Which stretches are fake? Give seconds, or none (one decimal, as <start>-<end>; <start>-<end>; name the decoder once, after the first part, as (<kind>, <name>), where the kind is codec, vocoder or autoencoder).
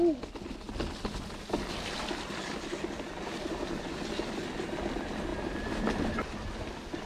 5.3-6.5 (vocoder, BigVGAN v2)